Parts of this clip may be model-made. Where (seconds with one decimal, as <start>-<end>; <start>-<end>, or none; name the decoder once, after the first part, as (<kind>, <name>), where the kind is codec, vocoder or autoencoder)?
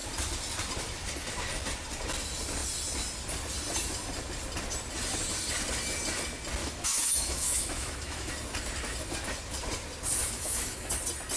6.6-8.3 (autoencoder, DAC-VAE); 10.2-10.9